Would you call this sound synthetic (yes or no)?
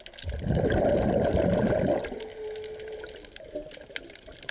no